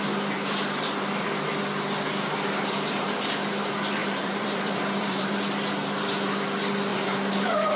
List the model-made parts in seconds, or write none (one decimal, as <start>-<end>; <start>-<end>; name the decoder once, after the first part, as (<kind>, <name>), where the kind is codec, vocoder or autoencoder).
4.0-5.3 (vocoder, BigVGAN v2); 6.9-7.8